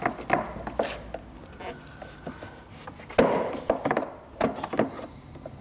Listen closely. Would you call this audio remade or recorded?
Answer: recorded